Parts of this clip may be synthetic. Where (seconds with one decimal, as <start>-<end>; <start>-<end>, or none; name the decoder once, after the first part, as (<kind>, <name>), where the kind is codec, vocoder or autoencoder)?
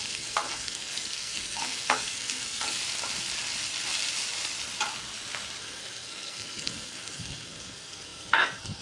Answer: 0.0-2.8 (codec, SNAC); 5.6-8.8